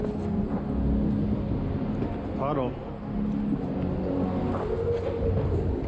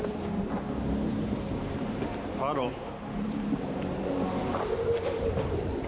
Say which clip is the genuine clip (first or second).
first